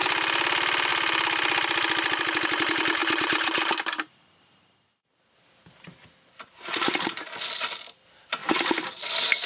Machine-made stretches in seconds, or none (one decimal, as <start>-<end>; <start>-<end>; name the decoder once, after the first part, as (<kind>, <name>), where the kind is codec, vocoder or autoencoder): none